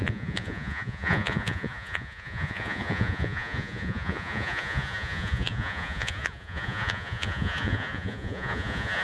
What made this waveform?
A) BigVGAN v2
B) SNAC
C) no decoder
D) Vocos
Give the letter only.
D